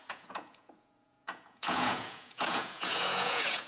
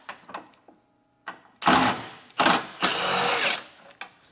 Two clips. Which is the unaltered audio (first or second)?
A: second